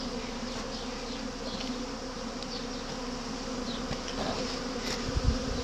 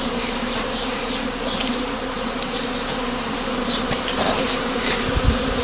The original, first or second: first